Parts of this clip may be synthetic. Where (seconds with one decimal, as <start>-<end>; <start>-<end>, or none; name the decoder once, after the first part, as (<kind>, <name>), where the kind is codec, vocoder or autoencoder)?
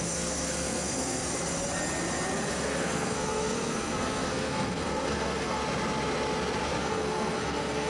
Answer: 0.0-1.2 (codec, SNAC); 2.5-5.6; 6.8-7.9